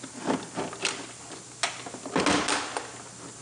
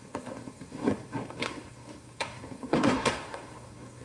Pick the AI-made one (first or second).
second